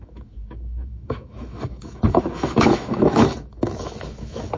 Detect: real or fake fake